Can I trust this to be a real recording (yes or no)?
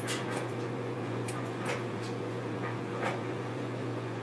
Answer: no